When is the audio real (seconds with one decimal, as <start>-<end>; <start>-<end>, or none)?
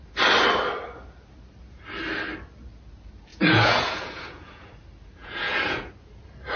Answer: 0.0-3.3; 4.7-5.2; 5.9-6.6